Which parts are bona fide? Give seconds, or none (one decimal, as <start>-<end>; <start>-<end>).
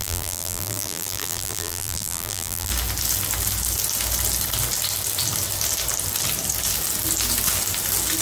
2.7-8.2